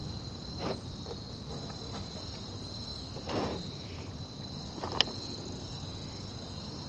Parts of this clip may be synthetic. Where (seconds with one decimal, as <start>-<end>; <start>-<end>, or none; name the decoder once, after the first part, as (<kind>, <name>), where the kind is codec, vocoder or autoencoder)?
none